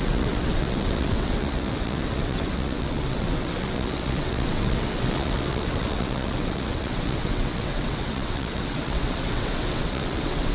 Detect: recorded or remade remade